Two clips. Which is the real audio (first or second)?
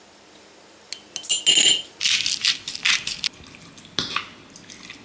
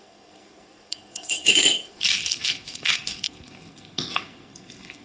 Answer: first